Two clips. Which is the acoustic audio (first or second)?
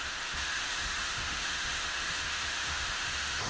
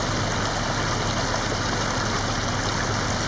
second